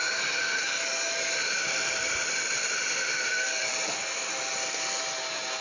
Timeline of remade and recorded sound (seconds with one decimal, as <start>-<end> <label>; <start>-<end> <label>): 0.0-1.4 recorded; 1.4-3.8 remade; 3.8-5.6 recorded